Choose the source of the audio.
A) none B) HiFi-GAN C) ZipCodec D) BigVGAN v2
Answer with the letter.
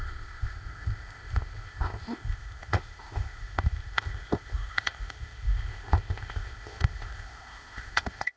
C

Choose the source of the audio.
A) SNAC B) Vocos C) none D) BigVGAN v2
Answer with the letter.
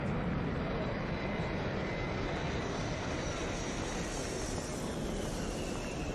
C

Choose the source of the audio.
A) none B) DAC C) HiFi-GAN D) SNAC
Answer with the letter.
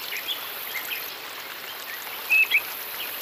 A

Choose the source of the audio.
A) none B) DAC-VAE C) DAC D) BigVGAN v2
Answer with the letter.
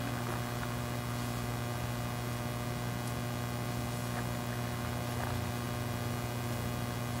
A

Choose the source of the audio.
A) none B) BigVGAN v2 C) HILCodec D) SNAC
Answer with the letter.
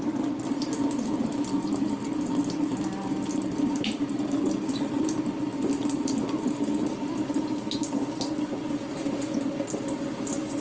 A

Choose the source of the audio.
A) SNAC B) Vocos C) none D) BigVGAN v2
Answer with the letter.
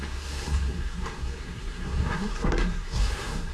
A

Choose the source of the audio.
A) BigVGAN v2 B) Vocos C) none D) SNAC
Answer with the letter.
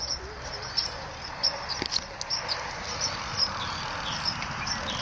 C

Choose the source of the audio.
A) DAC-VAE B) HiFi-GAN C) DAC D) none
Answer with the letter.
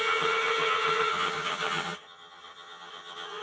B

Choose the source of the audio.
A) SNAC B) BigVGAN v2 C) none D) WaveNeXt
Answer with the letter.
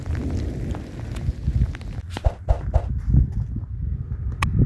C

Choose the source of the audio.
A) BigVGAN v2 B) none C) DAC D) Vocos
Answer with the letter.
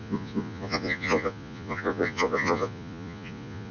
D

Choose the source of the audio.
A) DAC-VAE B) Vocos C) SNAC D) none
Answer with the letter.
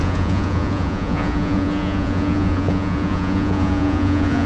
B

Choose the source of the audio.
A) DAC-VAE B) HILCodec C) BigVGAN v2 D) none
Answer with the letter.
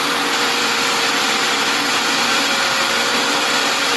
C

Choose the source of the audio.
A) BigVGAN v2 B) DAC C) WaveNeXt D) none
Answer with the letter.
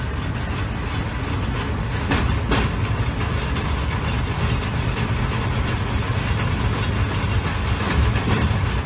D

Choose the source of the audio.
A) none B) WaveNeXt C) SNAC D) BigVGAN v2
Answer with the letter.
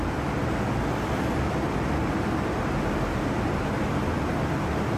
A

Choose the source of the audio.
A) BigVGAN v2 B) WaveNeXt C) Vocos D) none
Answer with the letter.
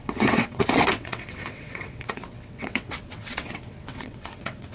B